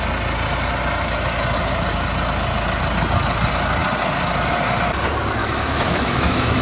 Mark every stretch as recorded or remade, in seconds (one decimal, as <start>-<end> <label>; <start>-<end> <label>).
0.0-5.4 recorded; 5.4-6.6 remade